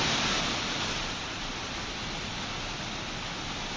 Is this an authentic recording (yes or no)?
yes